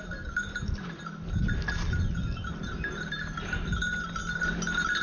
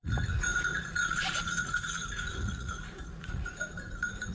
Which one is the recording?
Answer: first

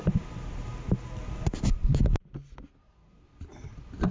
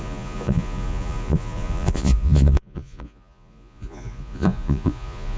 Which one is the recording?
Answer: first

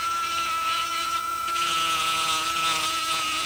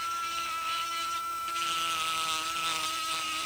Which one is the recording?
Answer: second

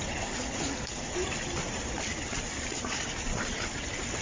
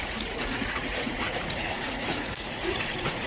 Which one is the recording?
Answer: first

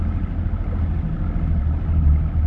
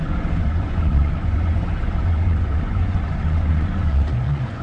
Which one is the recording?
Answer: first